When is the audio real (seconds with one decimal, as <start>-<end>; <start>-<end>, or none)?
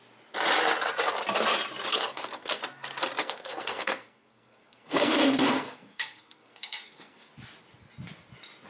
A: 0.0-1.9; 2.6-3.2; 7.3-8.7